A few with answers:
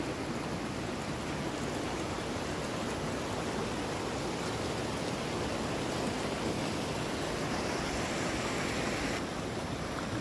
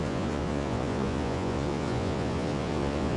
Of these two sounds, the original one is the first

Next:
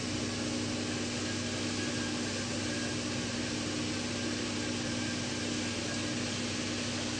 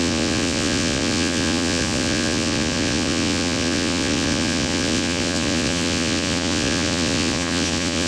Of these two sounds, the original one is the first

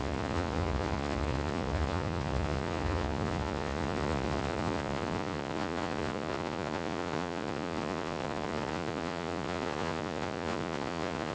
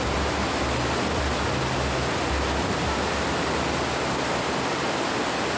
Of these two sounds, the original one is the second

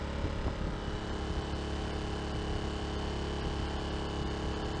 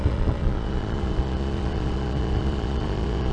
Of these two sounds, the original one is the first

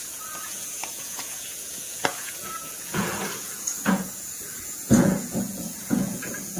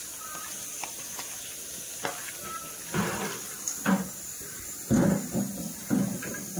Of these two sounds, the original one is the second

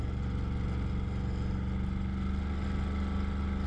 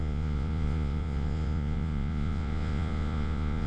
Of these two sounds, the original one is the first